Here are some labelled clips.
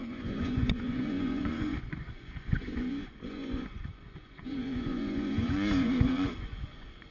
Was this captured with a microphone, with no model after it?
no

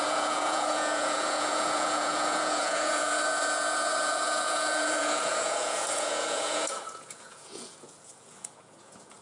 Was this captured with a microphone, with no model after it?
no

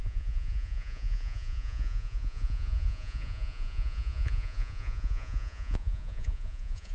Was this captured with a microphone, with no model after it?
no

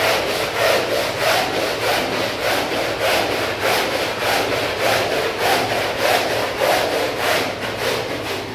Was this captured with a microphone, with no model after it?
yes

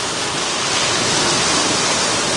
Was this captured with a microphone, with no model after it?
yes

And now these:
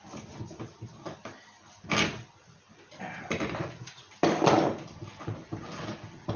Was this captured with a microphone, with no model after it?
yes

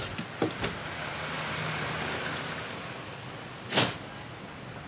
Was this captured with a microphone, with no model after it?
yes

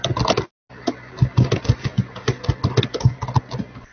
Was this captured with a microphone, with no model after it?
yes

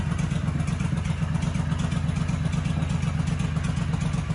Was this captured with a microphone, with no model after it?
yes